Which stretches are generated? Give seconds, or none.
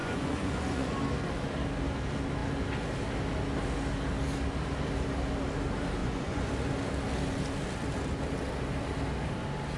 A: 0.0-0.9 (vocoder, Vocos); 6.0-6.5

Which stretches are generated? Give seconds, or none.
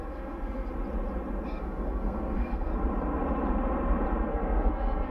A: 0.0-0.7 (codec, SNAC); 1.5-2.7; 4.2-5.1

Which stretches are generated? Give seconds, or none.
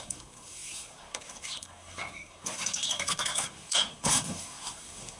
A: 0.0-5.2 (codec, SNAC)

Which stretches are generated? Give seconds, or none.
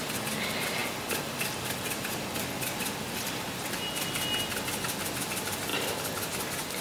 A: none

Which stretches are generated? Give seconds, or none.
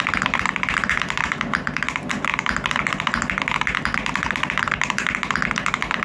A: 0.0-2.3 (vocoder, BigVGAN v2); 3.8-6.0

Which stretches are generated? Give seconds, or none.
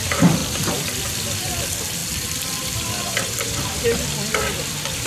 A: 0.0-0.4 (vocoder, BigVGAN v2); 1.3-5.1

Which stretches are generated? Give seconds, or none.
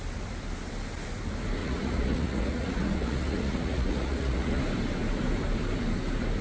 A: 1.6-4.6 (vocoder, Vocos)